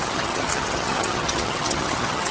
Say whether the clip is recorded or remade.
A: remade